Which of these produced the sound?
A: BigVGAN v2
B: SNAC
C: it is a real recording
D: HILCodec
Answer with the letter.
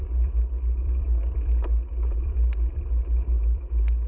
A